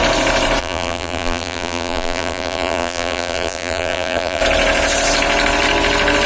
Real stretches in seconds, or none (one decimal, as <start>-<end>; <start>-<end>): 0.0-0.6; 4.4-6.3